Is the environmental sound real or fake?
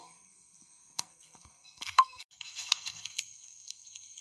fake